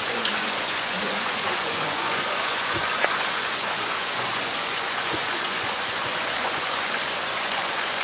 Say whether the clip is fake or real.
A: fake